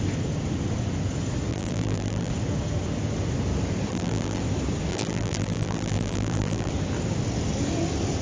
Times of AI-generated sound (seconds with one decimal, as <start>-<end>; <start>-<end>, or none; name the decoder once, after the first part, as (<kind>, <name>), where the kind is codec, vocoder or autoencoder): 1.5-2.3 (vocoder, BigVGAN v2); 3.9-4.4; 4.9-6.7